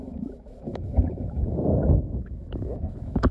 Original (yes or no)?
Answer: no